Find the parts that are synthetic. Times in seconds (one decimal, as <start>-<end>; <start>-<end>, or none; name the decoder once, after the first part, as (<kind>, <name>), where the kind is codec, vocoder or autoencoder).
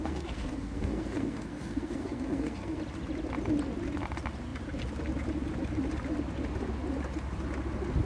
0.0-2.8 (codec, SNAC)